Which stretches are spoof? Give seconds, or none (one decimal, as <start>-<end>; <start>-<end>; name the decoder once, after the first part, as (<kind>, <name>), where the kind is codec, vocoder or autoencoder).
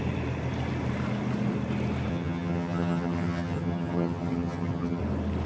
2.1-5.0 (vocoder, HiFi-GAN)